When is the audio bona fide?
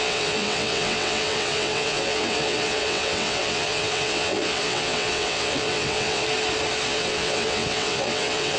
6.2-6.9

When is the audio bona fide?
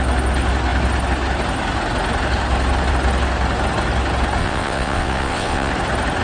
0.0-4.4; 5.7-6.2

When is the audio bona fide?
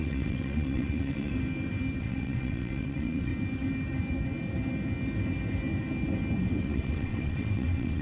1.3-2.0; 3.3-6.6